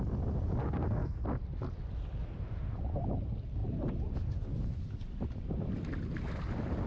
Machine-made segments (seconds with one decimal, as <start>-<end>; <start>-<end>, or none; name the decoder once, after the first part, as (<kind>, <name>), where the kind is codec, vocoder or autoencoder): 0.6-1.2 (codec, SNAC)